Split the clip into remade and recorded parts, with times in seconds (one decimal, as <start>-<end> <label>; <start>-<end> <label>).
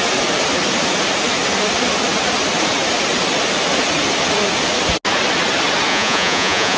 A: 0.0-5.9 recorded; 5.9-6.8 remade